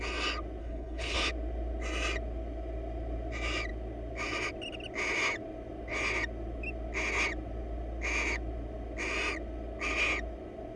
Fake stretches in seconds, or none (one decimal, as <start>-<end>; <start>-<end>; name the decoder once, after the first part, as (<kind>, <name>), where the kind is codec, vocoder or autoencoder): 0.6-1.3 (codec, HILCodec)